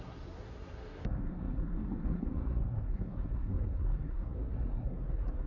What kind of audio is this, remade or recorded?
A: remade